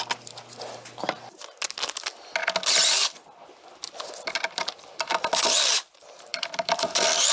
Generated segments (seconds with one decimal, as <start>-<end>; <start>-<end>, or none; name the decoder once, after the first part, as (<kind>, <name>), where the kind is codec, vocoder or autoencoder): none